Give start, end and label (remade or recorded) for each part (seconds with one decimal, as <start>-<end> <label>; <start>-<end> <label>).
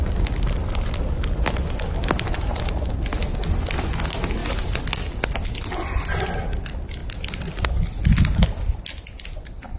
0.0-9.8 recorded